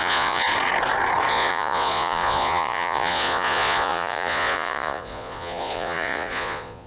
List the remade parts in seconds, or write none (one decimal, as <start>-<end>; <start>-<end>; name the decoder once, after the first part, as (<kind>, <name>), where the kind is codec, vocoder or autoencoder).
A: 0.0-0.5 (vocoder, Vocos); 1.3-6.9